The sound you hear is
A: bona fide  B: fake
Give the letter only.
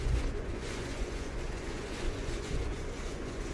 B